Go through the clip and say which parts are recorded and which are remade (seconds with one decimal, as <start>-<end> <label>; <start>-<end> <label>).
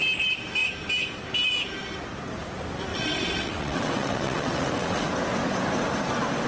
0.0-2.9 recorded; 2.9-5.1 remade; 5.1-6.5 recorded